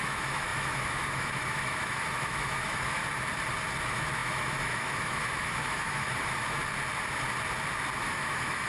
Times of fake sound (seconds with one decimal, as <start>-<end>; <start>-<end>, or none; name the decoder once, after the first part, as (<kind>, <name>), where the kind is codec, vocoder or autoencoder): 0.0-3.0 (autoencoder, DAC-VAE); 3.8-6.6; 8.0-8.7